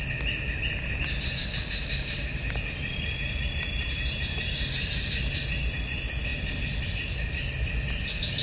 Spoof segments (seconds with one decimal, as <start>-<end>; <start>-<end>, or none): none

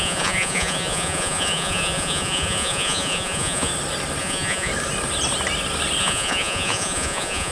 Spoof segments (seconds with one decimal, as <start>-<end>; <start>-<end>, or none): 0.0-3.7; 4.2-4.7; 6.0-7.5

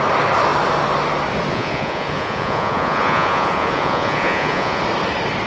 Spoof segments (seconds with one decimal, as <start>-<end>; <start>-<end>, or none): 1.5-4.8

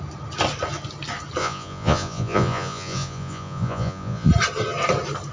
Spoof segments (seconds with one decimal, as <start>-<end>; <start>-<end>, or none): 1.4-4.3

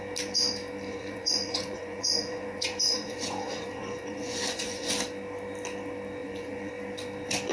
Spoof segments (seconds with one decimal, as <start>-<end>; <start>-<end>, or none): 0.9-4.9; 6.2-6.7

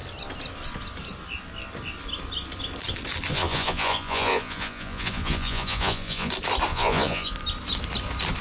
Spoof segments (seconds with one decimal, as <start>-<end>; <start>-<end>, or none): 3.3-6.3; 6.7-7.3

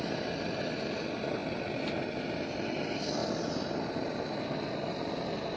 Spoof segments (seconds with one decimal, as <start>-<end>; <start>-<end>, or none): none

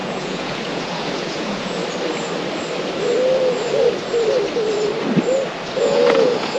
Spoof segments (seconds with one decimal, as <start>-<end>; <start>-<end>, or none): 0.0-1.8; 5.8-6.6